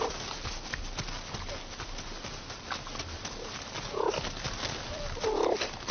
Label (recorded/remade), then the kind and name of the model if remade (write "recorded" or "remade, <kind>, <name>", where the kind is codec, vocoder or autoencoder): recorded